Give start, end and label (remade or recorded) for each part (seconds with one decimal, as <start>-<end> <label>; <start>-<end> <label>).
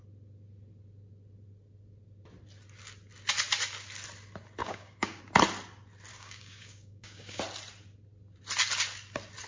0.0-4.6 recorded; 4.6-5.2 remade; 5.2-6.1 recorded; 6.1-7.4 remade; 7.4-9.5 recorded